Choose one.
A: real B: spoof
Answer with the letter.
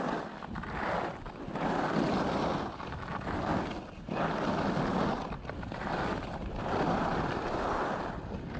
A